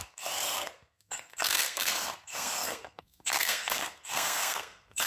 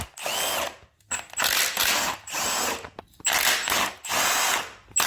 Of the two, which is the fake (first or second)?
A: first